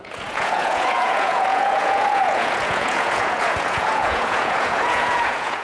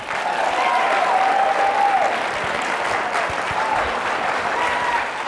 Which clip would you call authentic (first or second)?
second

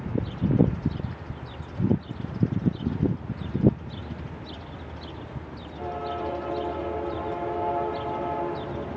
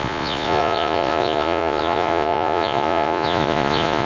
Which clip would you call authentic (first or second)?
first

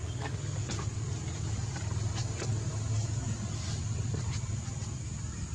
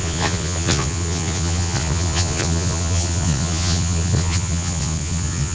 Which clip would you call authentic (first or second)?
first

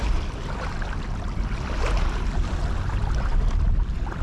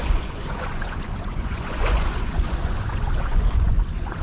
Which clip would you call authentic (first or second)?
first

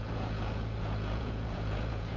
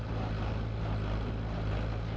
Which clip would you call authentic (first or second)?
second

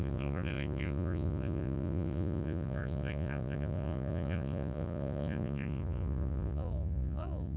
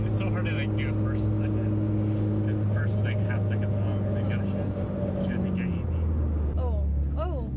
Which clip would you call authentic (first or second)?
second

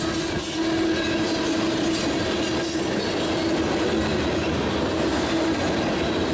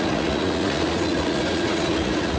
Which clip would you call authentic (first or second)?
first